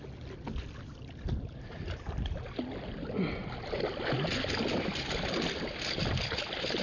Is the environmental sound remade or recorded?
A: recorded